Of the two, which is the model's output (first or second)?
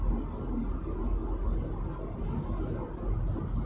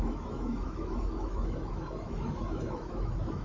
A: second